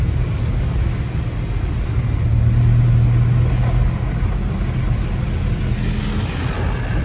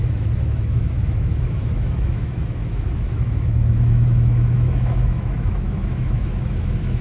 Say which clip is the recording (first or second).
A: first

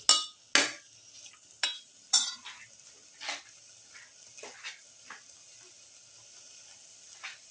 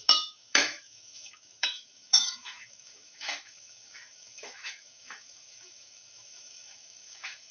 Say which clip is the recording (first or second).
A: first